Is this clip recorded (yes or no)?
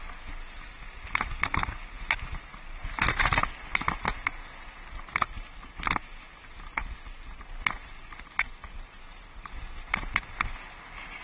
yes